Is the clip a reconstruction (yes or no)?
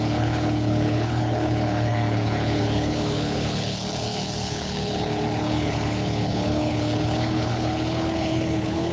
yes